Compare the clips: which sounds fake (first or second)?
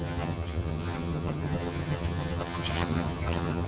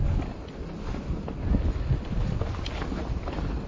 first